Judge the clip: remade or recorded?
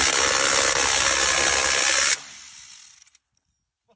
recorded